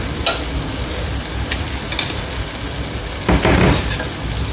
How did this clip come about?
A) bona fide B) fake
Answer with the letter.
A